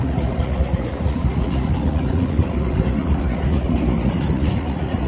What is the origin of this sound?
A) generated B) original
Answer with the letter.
A